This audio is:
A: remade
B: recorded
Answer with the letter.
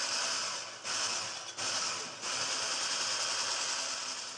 B